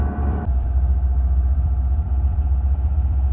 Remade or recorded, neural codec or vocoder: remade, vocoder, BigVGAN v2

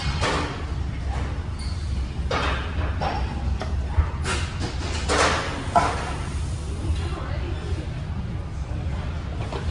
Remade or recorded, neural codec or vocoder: recorded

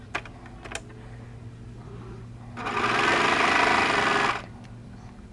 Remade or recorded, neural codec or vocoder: recorded